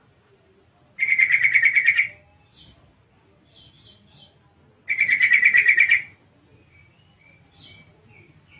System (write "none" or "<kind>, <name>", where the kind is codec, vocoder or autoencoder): none